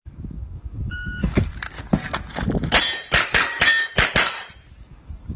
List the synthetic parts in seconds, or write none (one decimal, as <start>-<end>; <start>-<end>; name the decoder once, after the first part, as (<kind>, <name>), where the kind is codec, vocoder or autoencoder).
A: 0.0-1.5 (codec, DAC); 4.7-5.4